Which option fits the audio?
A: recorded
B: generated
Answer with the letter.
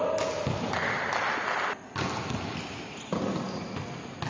A